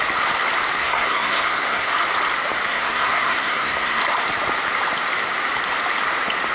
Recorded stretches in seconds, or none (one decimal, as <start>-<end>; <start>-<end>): 0.0-0.8; 1.9-2.7; 4.0-6.5